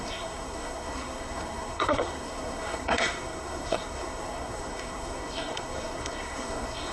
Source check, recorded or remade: remade